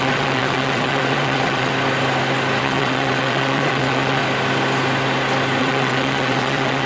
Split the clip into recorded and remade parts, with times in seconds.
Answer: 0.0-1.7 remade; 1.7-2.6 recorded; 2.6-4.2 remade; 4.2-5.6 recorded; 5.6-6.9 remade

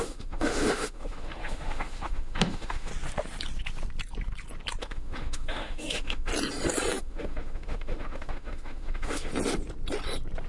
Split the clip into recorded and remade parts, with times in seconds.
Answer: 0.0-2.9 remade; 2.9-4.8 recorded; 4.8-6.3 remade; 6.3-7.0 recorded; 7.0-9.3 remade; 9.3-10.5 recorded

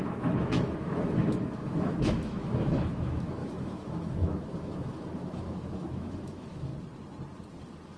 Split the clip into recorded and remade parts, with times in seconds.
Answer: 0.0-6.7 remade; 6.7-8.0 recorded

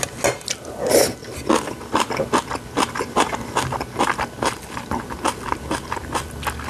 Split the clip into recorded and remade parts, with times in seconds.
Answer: 0.0-6.7 recorded

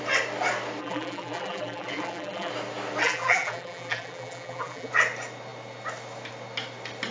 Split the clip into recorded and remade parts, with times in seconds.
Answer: 0.0-0.8 recorded; 0.8-2.5 remade; 2.5-3.0 recorded; 3.0-4.9 remade; 4.9-7.1 recorded